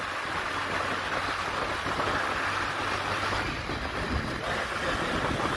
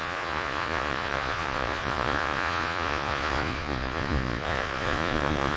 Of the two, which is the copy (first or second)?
second